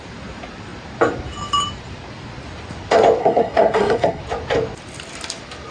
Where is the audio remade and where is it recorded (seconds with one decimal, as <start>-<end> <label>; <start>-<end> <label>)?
0.0-3.2 recorded; 3.2-4.2 remade; 4.2-5.7 recorded